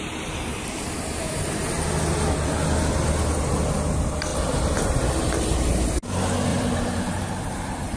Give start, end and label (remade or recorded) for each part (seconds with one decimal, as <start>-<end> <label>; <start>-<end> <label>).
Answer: 0.0-0.5 recorded; 0.5-1.3 remade; 1.3-4.3 recorded; 4.3-6.1 remade; 6.1-6.5 recorded; 6.5-7.3 remade; 7.3-8.0 recorded